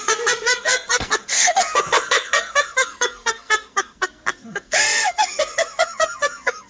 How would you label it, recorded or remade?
remade